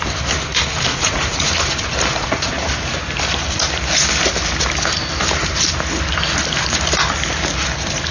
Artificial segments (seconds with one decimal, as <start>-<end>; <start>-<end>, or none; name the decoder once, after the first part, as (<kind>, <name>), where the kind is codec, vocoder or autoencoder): 0.9-1.7 (vocoder, Vocos); 2.2-2.8